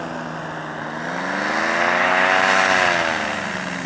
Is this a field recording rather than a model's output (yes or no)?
yes